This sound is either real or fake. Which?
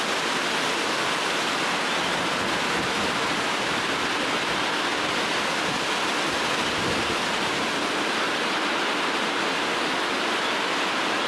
real